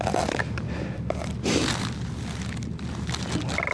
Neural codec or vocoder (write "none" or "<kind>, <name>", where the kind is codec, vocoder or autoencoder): none